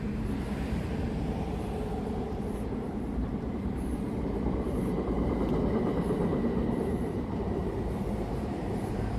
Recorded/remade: remade